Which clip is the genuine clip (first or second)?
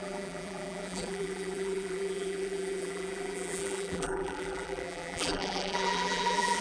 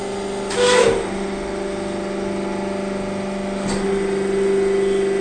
second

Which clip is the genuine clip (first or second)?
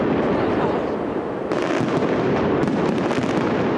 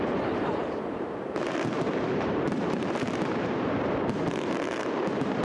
first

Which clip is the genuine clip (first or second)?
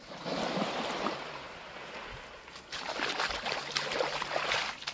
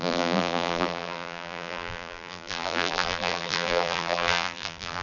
first